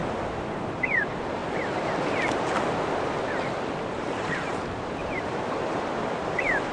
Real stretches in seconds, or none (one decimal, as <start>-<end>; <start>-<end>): 0.0-0.5; 1.4-3.9